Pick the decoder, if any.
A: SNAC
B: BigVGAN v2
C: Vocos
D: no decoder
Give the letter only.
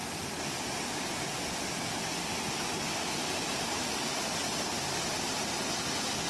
D